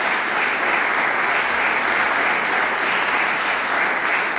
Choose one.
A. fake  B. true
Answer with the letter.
B